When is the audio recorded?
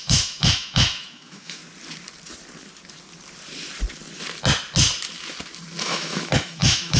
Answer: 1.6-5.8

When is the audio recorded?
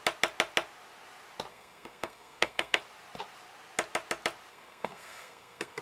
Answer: 0.0-1.5; 2.8-4.5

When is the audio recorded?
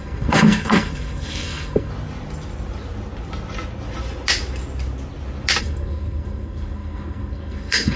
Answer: 1.9-5.6